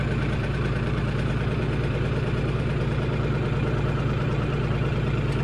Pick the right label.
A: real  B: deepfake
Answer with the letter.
B